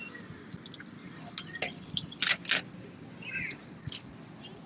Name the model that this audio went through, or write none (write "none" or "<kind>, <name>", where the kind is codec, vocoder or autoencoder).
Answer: none